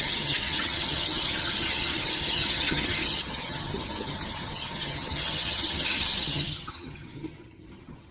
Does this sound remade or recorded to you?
remade